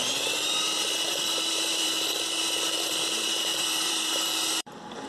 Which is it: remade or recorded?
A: remade